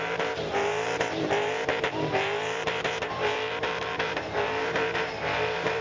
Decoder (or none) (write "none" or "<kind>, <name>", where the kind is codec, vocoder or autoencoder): vocoder, BigVGAN v2